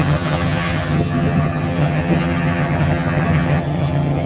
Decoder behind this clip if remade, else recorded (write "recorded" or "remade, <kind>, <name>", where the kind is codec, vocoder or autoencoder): remade, vocoder, HiFi-GAN